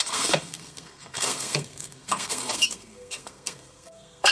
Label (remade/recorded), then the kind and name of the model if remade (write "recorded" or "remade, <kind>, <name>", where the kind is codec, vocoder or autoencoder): remade, codec, SNAC